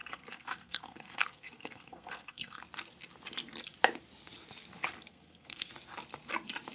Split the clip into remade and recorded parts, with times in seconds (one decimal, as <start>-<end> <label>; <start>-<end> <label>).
0.0-2.6 remade; 2.6-5.1 recorded; 5.1-5.7 remade; 5.7-6.7 recorded